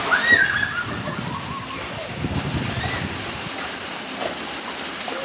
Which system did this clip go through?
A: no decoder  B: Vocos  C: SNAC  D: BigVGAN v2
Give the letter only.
A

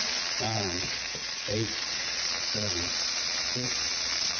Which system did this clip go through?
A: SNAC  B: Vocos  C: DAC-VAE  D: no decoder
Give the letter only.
B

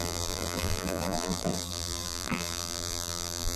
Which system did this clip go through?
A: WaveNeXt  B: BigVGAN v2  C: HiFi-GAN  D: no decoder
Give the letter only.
B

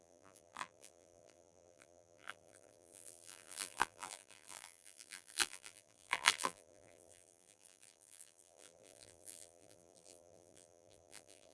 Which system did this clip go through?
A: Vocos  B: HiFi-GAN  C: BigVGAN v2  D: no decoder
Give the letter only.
C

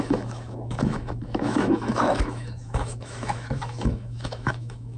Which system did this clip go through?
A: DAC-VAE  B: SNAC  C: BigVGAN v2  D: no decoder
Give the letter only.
A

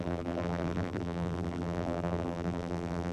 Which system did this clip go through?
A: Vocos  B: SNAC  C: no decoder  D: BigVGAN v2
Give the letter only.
D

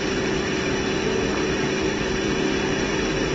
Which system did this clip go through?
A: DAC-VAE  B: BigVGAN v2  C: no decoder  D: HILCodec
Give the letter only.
C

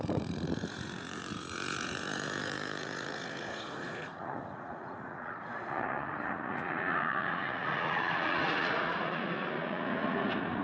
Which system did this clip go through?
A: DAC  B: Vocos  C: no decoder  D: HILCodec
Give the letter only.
B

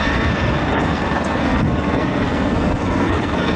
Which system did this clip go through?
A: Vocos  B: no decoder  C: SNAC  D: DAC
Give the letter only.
C